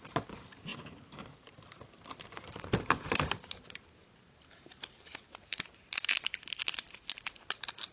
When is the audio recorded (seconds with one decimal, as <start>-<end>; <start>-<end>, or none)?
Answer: 6.1-7.2